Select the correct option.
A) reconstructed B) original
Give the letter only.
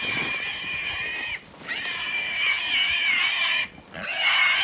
B